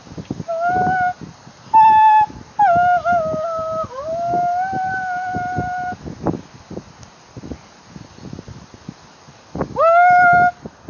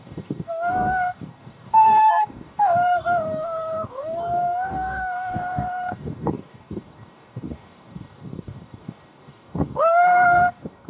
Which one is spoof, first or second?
second